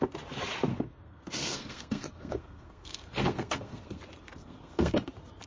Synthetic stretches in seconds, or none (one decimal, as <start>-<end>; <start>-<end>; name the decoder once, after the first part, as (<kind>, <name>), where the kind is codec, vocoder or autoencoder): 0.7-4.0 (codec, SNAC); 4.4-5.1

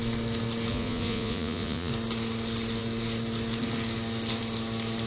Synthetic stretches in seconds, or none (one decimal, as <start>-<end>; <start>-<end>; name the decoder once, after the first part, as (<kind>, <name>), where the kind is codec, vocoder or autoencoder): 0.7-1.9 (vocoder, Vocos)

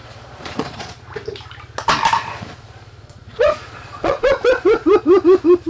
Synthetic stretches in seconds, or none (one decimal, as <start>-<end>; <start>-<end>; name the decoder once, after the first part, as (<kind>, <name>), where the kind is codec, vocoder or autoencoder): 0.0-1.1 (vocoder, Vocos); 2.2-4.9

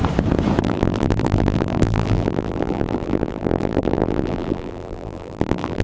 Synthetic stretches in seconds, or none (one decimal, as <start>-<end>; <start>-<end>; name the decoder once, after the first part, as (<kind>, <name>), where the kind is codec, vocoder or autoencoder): 0.6-5.8 (vocoder, BigVGAN v2)